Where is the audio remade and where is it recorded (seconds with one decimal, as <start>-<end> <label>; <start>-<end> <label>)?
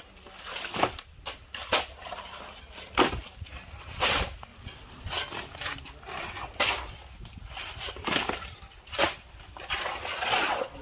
0.0-4.5 recorded; 4.5-5.1 remade; 5.1-10.8 recorded